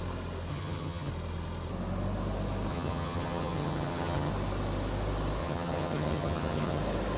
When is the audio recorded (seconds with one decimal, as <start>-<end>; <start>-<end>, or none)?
0.0-0.5; 1.1-2.7; 4.3-5.4; 6.8-7.2